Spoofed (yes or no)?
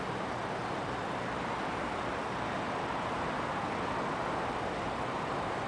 no